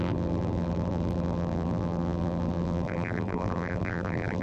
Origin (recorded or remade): remade